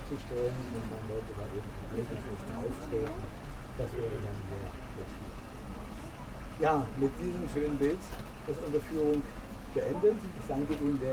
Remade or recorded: recorded